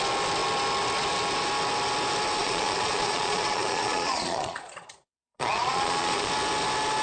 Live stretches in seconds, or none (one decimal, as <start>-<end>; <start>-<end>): 0.0-2.4; 6.3-7.0